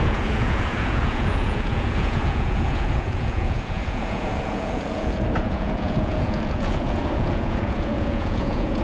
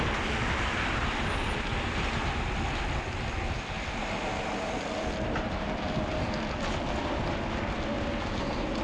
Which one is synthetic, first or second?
first